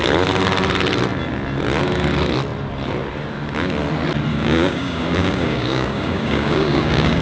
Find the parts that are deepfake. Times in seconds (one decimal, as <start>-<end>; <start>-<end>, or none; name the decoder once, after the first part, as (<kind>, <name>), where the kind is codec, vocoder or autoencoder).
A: 4.3-7.2 (codec, DAC)